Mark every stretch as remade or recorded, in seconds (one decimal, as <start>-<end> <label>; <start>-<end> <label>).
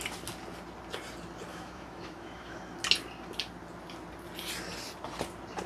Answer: 0.0-1.5 recorded; 1.5-2.6 remade; 2.6-5.7 recorded